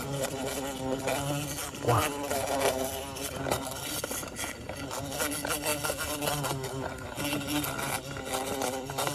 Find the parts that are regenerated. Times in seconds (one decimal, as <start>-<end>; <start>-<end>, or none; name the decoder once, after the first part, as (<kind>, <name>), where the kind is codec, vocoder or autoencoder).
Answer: none